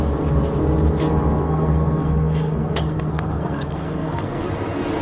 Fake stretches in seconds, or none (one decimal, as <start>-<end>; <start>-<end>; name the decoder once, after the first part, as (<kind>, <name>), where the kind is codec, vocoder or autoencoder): 1.4-4.4 (codec, SNAC)